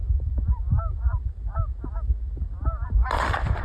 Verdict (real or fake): real